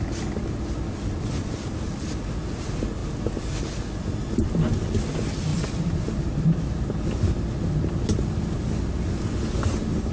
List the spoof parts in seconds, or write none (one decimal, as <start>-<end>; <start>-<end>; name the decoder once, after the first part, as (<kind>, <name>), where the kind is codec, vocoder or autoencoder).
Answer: none